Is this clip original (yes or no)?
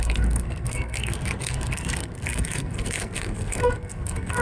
no